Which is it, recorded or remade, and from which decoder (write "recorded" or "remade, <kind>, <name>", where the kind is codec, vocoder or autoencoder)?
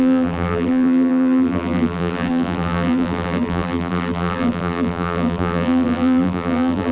remade, vocoder, BigVGAN v2